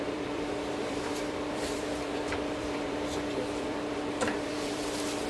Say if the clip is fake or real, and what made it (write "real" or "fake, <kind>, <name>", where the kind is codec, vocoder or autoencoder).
fake, vocoder, BigVGAN v2